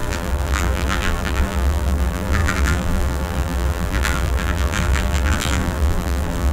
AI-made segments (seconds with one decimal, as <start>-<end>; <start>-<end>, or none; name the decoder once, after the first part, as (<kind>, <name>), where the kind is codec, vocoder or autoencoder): 0.0-6.5 (vocoder, BigVGAN v2)